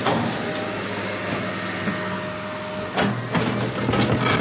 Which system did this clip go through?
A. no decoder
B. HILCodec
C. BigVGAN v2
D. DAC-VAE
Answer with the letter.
A